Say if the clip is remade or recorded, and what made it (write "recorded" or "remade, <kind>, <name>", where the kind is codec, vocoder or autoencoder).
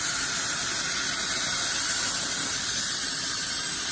recorded